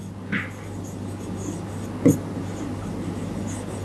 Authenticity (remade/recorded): recorded